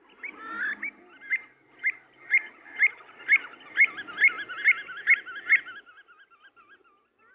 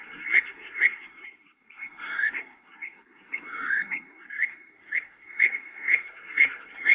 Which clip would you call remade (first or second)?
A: second